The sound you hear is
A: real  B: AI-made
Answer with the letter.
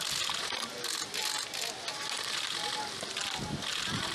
A